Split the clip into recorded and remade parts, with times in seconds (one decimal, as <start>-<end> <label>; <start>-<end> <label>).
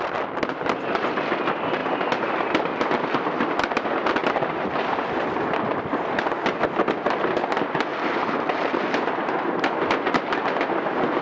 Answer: 0.0-7.9 recorded; 7.9-8.8 remade; 8.8-11.2 recorded